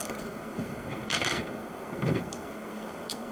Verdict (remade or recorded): remade